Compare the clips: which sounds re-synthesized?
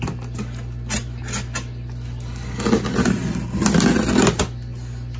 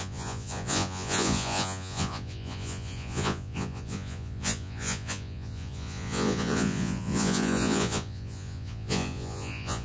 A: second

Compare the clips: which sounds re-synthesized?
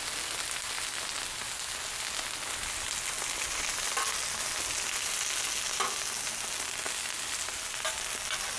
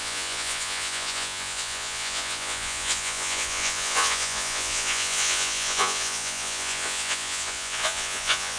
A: second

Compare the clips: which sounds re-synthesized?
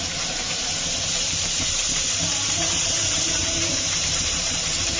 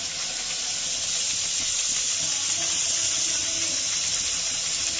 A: first